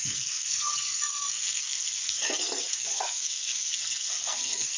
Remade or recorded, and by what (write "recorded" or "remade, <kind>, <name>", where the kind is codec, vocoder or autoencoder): remade, codec, SNAC